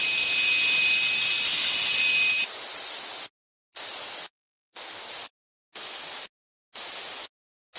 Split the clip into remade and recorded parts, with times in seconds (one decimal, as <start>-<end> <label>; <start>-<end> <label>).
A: 0.0-7.8 recorded